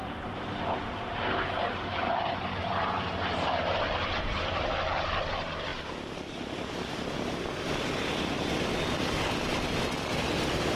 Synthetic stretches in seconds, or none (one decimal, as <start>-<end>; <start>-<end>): 0.0-4.7